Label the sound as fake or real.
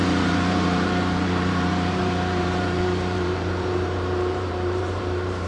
fake